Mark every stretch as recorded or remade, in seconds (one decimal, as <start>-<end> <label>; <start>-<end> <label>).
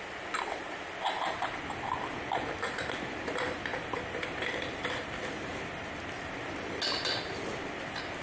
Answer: 0.0-8.2 recorded